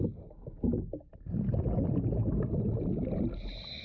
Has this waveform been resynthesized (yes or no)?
no